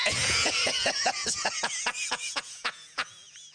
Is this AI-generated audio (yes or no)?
yes